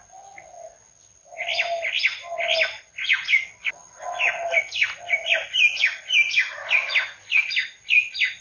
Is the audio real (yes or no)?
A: yes